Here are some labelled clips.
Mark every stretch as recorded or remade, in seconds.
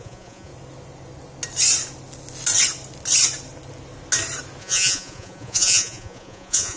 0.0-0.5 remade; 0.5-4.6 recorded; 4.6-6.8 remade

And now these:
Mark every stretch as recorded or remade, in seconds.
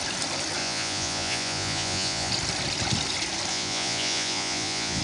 0.0-0.6 recorded; 0.6-2.3 remade; 2.3-3.5 recorded; 3.5-5.0 remade